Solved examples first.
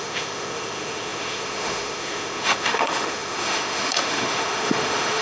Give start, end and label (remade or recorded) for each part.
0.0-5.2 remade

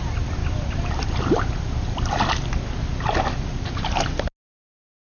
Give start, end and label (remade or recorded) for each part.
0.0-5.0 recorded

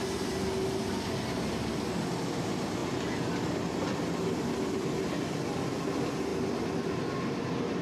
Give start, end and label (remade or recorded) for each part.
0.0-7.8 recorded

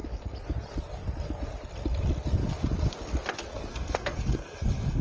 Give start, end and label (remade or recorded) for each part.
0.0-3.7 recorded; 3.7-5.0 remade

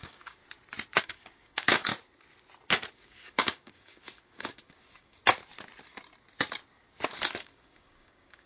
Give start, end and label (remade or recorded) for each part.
0.0-0.4 remade; 0.4-1.0 recorded; 1.0-1.9 remade; 1.9-2.9 recorded; 2.9-5.2 remade; 5.2-7.4 recorded; 7.4-8.5 remade